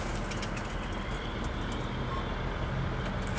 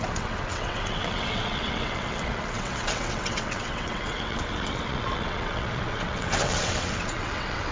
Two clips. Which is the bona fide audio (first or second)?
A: first